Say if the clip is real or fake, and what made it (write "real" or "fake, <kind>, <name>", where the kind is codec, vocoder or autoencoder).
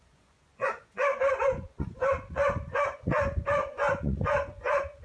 fake, vocoder, Vocos